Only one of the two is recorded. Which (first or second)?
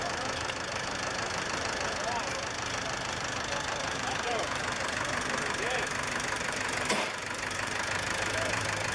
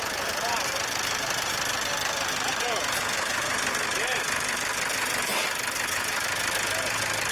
second